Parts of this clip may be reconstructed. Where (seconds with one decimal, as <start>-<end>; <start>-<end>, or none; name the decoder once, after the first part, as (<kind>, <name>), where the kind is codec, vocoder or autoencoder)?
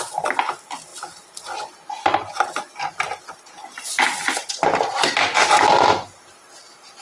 none